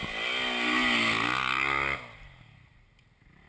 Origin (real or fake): real